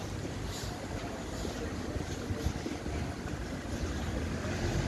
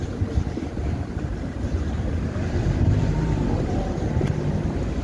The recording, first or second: first